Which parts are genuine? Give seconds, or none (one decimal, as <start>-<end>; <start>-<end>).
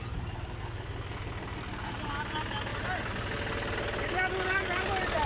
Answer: 0.0-5.3